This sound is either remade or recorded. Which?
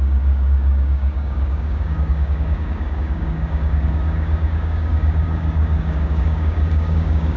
remade